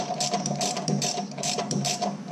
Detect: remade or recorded remade